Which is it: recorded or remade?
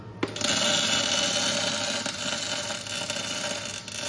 recorded